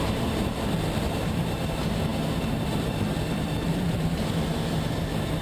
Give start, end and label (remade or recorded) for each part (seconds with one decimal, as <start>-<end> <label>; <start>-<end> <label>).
0.0-5.4 remade